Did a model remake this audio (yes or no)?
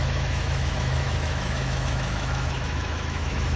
yes